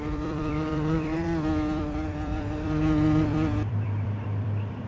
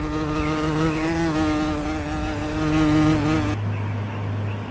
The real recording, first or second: second